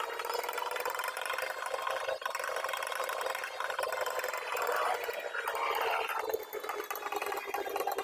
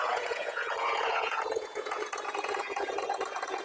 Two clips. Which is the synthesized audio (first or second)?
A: second